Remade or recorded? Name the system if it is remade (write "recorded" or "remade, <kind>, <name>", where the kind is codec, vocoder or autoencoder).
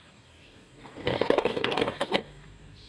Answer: remade, codec, DAC